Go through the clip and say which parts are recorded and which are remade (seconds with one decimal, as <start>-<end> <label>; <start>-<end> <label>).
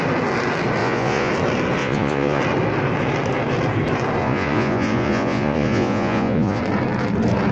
0.0-0.8 recorded; 0.8-1.3 remade; 1.3-1.8 recorded; 1.8-2.4 remade; 2.4-4.2 recorded; 4.2-6.6 remade; 6.6-7.5 recorded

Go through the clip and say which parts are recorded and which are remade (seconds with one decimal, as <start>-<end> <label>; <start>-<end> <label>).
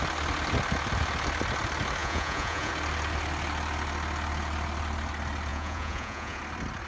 0.0-2.0 recorded; 2.0-2.7 remade; 2.7-5.5 recorded; 5.5-6.4 remade; 6.4-6.9 recorded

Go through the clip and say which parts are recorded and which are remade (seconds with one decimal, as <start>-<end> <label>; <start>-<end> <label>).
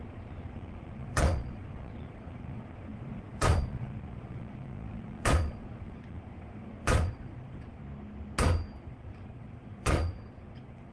0.0-7.8 remade; 7.8-8.8 recorded; 8.8-10.9 remade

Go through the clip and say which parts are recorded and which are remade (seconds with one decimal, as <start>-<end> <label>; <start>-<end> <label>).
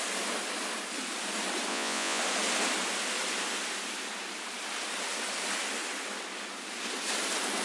0.0-1.7 recorded; 1.7-2.2 remade; 2.2-7.6 recorded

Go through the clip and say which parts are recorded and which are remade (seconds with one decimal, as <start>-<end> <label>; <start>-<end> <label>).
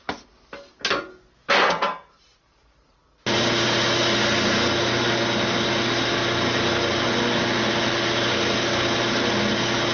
0.0-9.9 recorded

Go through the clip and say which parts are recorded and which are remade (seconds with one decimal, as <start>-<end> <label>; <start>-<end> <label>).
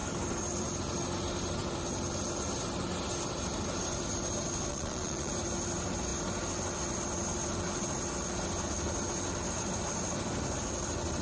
0.0-4.7 recorded; 4.7-5.3 remade; 5.3-11.2 recorded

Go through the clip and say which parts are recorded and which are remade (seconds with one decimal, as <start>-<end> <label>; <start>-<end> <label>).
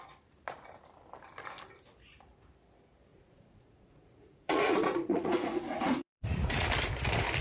0.0-3.1 recorded; 3.1-6.7 remade; 6.7-7.4 recorded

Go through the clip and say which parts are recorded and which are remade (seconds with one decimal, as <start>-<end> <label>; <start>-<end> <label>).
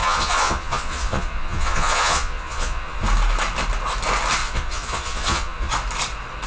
0.0-3.0 remade; 3.0-4.4 recorded; 4.4-5.7 remade; 5.7-6.5 recorded